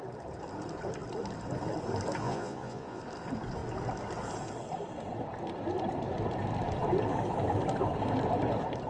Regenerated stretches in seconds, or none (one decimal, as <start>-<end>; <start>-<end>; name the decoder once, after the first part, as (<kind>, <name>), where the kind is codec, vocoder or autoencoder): 2.2-3.0 (vocoder, Vocos)